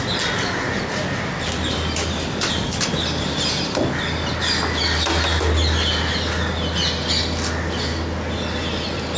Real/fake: real